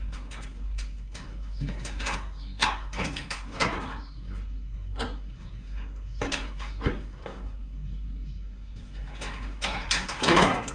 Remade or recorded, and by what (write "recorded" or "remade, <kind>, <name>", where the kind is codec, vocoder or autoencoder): remade, codec, SNAC